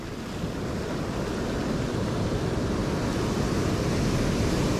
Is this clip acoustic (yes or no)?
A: yes